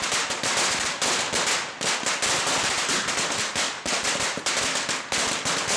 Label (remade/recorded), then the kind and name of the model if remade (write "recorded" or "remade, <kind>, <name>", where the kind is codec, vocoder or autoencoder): recorded